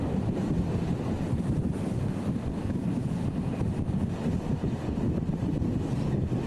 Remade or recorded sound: recorded